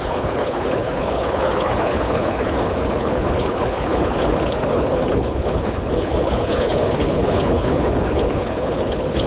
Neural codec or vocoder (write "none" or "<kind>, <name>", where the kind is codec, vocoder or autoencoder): codec, HILCodec